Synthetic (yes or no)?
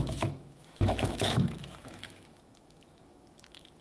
yes